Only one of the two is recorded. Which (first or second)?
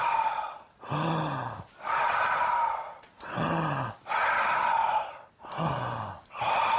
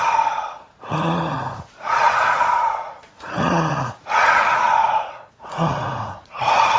first